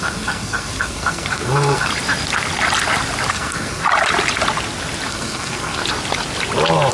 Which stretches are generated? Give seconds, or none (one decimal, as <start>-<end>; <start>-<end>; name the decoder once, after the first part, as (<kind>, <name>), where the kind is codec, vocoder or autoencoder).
0.0-1.9 (codec, SNAC); 3.3-3.8; 5.1-5.8